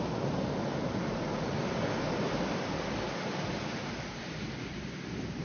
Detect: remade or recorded recorded